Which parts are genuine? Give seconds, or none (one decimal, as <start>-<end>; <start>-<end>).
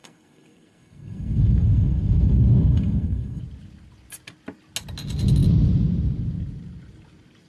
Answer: 3.4-7.5